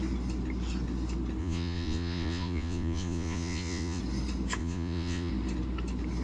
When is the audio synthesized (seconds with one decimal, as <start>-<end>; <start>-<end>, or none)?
1.4-4.0; 4.6-5.3